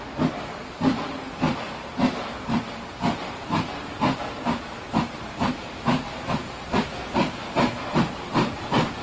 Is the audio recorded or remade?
recorded